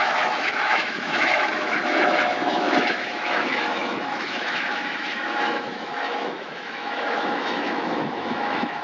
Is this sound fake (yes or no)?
yes